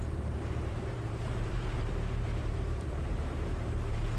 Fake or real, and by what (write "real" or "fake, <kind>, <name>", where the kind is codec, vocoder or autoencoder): fake, vocoder, BigVGAN v2